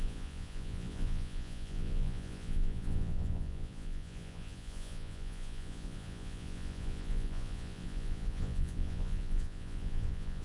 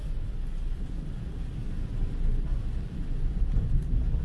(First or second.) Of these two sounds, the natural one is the second